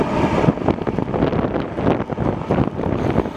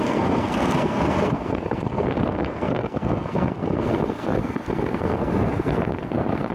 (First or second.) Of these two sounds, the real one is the first